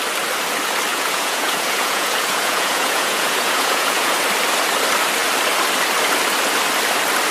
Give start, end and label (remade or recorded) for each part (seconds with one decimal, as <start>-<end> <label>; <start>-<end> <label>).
0.0-0.9 recorded; 0.9-4.1 remade; 4.1-7.3 recorded